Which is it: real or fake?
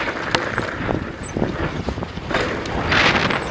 real